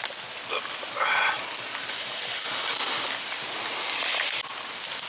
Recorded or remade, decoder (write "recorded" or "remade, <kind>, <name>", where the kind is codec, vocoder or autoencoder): recorded